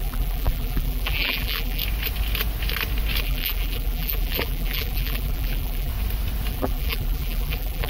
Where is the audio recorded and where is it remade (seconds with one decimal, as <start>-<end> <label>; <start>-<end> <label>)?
0.0-1.8 remade; 1.8-3.2 recorded; 3.2-5.9 remade; 5.9-6.5 recorded; 6.5-7.9 remade